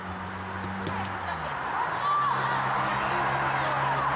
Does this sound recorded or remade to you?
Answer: recorded